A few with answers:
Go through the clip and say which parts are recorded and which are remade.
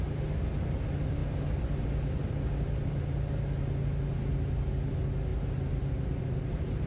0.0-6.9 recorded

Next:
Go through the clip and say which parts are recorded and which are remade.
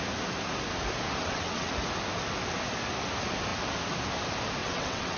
0.0-1.2 recorded; 1.2-1.7 remade; 1.7-4.6 recorded; 4.6-5.2 remade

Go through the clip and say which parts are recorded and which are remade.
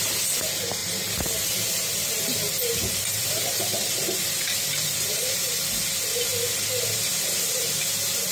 0.0-0.8 recorded; 0.8-5.8 remade; 5.8-8.3 recorded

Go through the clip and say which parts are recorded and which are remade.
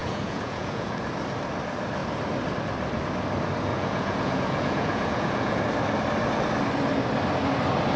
0.0-1.0 remade; 1.0-3.7 recorded; 3.7-5.6 remade; 5.6-8.0 recorded